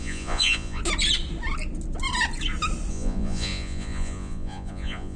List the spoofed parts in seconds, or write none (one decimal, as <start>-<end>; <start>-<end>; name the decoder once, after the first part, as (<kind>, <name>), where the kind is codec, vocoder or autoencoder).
0.0-0.8 (vocoder, Vocos); 2.9-5.2